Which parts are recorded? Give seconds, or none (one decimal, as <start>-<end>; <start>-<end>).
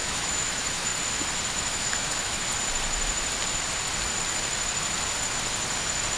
0.9-1.5; 2.5-6.2